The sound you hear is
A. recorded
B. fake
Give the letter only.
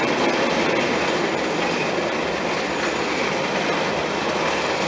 B